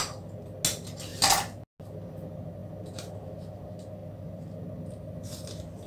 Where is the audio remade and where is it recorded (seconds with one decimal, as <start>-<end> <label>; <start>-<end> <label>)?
0.0-5.9 recorded